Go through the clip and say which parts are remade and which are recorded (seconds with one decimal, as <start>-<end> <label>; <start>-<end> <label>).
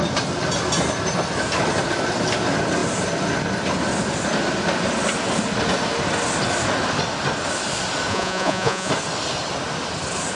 0.0-8.1 recorded; 8.1-8.9 remade; 8.9-10.4 recorded